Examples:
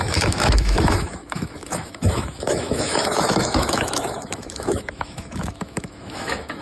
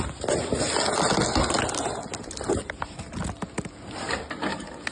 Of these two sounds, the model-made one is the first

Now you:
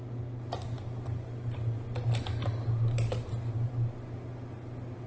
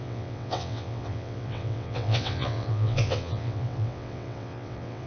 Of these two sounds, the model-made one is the second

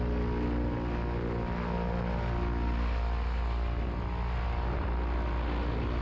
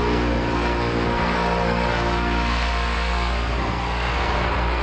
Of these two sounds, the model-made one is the second